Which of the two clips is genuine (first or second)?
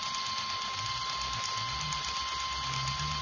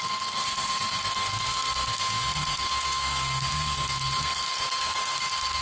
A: first